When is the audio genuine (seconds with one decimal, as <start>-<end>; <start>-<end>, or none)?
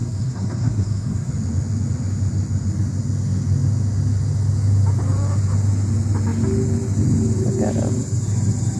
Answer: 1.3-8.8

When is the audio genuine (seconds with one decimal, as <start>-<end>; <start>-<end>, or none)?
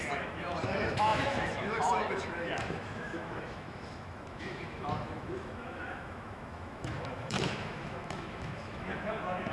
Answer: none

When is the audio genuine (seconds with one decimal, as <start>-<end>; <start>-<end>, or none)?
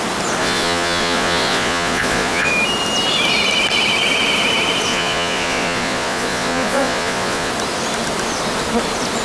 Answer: 0.0-0.4; 2.5-4.9; 7.5-9.2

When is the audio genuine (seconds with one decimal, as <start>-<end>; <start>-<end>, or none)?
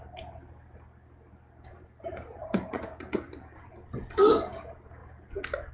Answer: 0.0-1.7; 3.7-5.7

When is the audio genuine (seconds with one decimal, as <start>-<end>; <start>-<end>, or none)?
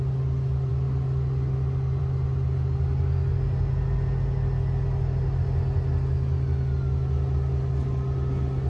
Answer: 0.0-8.7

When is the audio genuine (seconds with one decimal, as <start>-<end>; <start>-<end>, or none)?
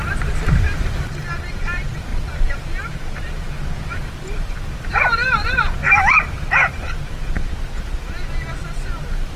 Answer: 0.0-2.1; 6.8-9.4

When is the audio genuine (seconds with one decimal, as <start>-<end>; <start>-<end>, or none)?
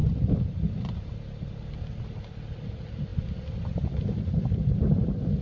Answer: 0.0-5.4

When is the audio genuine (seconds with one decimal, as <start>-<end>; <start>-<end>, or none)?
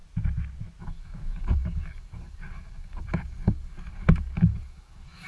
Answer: 0.0-0.8